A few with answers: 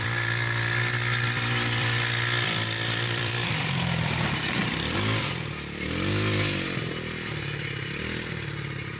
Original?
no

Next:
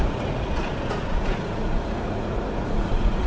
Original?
no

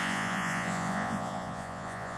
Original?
no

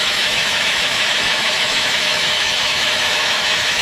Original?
no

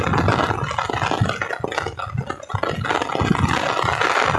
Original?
yes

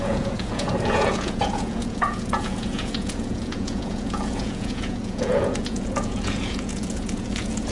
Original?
no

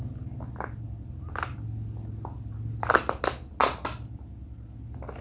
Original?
yes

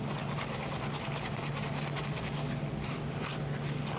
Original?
yes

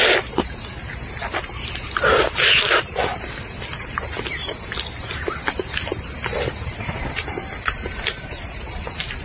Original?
yes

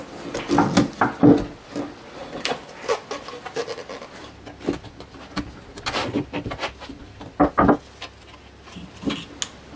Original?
yes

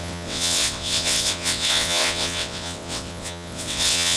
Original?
no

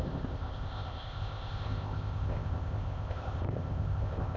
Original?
no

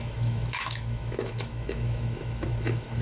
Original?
no